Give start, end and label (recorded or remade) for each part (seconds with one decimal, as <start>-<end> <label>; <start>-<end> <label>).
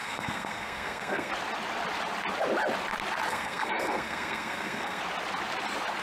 0.0-1.3 remade; 1.3-3.3 recorded; 3.3-5.0 remade; 5.0-6.0 recorded